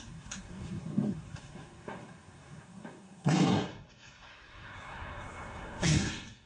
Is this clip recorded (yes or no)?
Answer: no